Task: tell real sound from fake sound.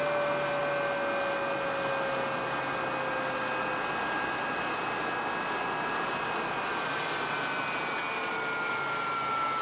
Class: real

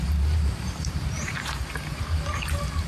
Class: fake